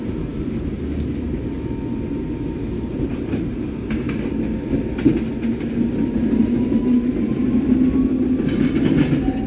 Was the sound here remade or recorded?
recorded